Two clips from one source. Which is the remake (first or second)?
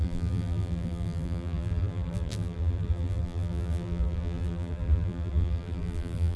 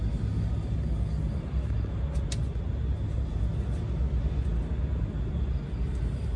first